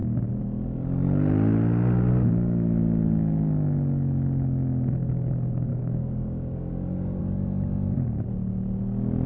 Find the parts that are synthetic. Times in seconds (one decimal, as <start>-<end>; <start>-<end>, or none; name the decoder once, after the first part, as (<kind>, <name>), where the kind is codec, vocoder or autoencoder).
5.7-7.2 (codec, DAC)